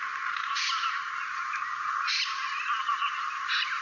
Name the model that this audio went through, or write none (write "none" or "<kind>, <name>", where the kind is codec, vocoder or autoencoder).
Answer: none